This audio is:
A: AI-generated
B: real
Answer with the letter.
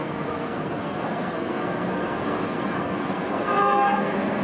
A